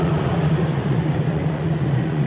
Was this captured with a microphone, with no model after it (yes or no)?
no